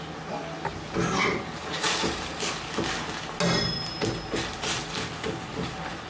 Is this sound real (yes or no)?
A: yes